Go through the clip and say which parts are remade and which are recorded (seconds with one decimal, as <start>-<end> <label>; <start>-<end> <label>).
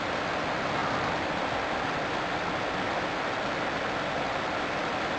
0.0-5.2 recorded